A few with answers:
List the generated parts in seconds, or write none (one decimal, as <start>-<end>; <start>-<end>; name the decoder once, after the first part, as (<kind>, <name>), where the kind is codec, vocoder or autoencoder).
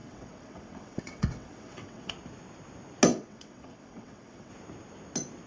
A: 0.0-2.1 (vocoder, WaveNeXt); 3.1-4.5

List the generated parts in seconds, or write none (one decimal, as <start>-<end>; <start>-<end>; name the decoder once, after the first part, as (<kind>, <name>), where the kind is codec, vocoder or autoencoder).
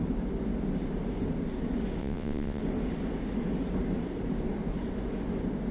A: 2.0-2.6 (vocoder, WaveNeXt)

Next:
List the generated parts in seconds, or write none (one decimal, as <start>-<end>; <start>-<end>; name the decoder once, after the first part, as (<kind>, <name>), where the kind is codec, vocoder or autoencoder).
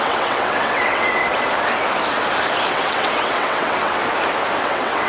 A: 0.0-1.2 (vocoder, WaveNeXt); 2.7-4.0; 4.6-5.1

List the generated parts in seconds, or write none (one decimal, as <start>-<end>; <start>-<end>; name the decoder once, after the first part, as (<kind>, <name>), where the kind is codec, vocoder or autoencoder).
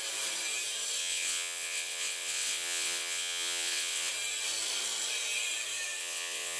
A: 1.0-4.1 (vocoder, WaveNeXt); 6.0-6.6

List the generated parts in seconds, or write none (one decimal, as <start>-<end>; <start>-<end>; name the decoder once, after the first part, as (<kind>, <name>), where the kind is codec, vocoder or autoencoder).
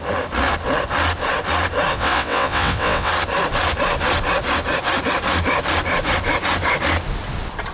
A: 1.9-3.1 (vocoder, WaveNeXt)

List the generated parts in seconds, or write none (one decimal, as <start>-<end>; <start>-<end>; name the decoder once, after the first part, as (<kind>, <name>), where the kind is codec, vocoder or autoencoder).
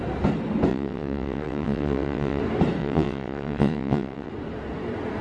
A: 0.7-2.4 (vocoder, WaveNeXt); 2.8-4.3